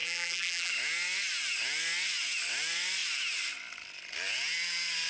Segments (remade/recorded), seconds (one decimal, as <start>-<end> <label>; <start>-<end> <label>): 0.0-0.7 remade; 0.7-5.1 recorded